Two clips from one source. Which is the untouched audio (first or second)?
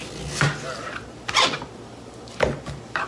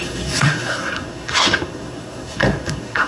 first